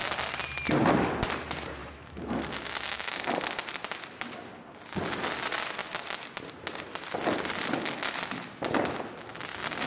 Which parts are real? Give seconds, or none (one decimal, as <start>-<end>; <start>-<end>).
0.0-1.8; 3.4-9.9